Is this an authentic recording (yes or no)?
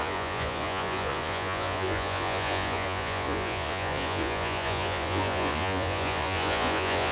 no